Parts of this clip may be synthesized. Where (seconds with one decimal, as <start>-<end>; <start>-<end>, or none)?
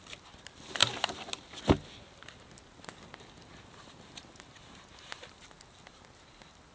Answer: none